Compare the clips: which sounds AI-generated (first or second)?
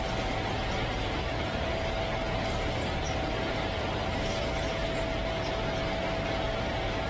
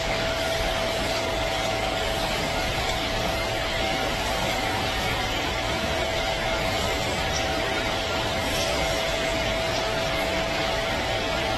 second